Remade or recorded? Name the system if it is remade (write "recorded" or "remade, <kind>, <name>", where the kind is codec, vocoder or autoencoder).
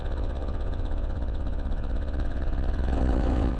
remade, vocoder, WaveNeXt